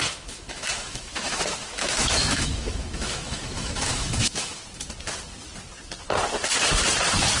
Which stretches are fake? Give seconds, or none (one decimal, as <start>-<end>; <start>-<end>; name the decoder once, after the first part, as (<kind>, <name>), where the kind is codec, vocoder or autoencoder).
0.0-4.6 (autoencoder, DAC-VAE)